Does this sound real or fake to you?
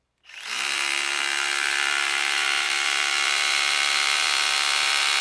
fake